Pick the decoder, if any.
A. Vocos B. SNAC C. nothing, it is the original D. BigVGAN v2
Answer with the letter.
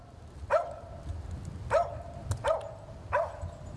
C